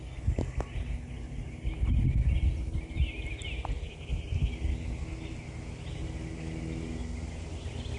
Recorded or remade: recorded